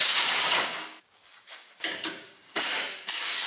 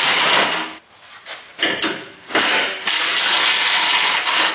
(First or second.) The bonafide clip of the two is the second